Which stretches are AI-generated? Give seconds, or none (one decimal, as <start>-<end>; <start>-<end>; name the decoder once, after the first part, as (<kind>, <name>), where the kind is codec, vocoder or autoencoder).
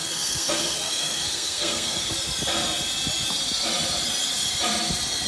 0.0-2.1 (codec, SNAC)